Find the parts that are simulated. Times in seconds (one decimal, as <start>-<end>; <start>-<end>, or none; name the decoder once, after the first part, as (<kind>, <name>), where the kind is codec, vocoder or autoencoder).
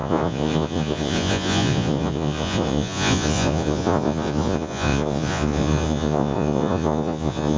0.0-7.6 (vocoder, Vocos)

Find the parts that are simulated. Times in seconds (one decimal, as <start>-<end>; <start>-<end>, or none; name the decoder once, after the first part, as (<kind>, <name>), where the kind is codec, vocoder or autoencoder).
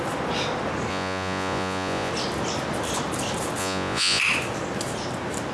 0.9-2.1 (vocoder, Vocos); 3.6-4.2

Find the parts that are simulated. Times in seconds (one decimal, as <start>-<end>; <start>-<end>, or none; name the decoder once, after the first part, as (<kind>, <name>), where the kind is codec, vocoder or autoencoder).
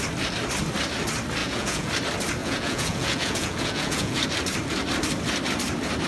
1.4-1.9 (vocoder, Vocos); 2.4-4.2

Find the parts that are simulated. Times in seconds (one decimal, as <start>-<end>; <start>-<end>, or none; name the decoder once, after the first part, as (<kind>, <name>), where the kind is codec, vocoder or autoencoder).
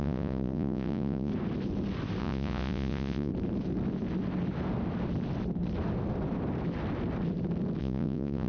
0.0-1.3 (vocoder, Vocos); 2.2-3.3; 7.8-8.5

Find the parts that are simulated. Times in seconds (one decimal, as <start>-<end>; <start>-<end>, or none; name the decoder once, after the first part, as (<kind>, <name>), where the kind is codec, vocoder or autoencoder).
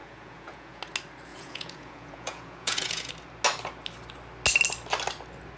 0.0-0.8 (vocoder, Vocos); 1.3-3.1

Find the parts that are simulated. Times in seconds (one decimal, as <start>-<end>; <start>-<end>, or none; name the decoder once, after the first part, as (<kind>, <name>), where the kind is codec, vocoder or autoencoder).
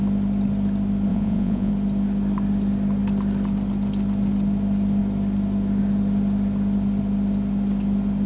1.1-1.7 (vocoder, Vocos)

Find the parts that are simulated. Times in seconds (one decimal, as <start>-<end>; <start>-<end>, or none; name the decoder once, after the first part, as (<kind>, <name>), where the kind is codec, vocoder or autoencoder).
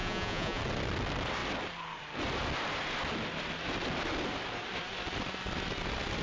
0.0-0.6 (vocoder, Vocos)